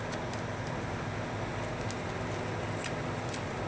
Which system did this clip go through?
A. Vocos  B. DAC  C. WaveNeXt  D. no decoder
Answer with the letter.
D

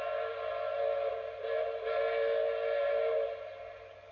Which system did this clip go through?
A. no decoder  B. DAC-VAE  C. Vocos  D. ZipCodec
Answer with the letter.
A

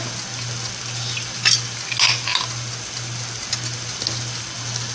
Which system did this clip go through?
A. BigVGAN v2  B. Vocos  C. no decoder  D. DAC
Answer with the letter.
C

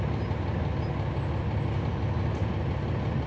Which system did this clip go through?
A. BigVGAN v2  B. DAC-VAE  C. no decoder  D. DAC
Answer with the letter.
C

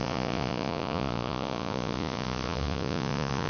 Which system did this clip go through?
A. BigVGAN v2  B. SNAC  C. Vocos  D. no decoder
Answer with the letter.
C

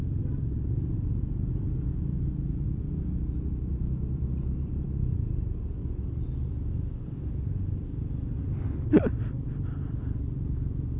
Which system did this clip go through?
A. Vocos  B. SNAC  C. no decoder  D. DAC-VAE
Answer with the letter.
C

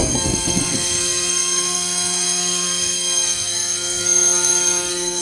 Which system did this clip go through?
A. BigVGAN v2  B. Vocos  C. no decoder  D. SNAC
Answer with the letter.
D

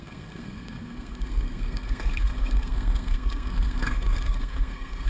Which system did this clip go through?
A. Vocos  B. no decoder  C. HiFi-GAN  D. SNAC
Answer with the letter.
D